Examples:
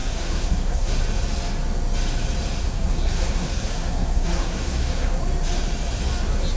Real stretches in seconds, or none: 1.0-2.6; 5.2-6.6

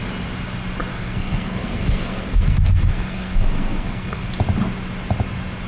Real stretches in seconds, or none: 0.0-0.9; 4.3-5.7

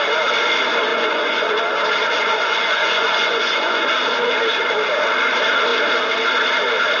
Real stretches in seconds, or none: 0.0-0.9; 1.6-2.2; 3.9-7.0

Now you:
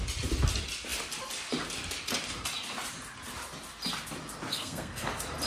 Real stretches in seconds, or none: 0.0-4.5; 5.1-5.5